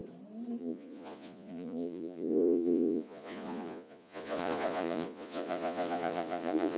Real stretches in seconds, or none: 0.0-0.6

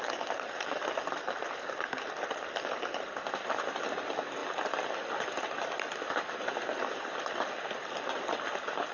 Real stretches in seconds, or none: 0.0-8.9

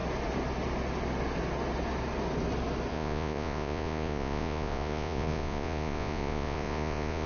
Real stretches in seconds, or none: 0.0-2.9

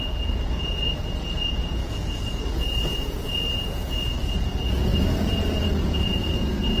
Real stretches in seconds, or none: none

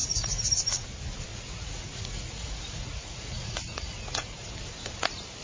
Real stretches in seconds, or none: 0.5-1.3; 4.5-5.4

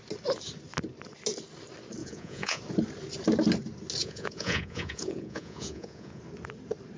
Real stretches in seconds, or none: 0.0-2.0; 2.6-4.0; 6.2-7.0

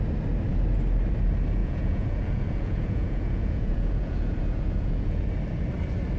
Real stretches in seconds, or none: 0.0-1.6; 5.3-6.2